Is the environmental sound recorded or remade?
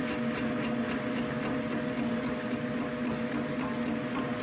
recorded